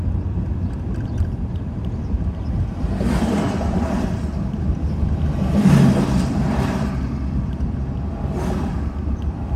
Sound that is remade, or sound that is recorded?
remade